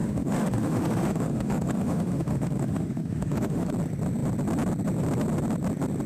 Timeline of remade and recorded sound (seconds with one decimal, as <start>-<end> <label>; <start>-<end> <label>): 0.0-3.7 remade; 3.7-6.1 recorded